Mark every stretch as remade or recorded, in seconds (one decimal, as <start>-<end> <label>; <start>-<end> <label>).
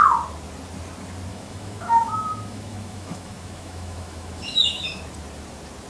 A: 0.0-1.3 recorded; 1.3-4.8 remade; 4.8-5.9 recorded